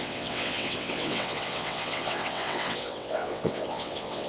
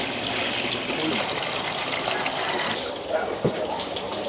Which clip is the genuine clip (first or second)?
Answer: second